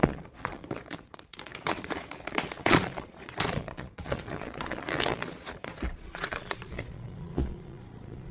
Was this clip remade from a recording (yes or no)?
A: yes